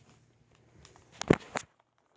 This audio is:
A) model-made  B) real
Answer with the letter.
B